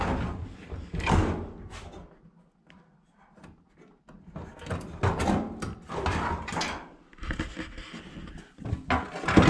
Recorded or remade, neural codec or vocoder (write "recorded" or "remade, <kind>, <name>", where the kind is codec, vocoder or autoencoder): recorded